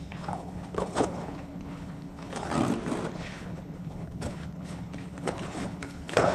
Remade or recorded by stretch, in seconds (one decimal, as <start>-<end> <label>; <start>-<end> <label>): 0.0-2.5 remade; 2.5-3.1 recorded; 3.1-6.3 remade